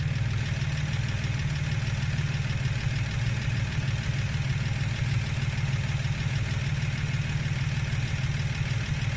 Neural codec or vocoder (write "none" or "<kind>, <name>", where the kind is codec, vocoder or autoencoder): none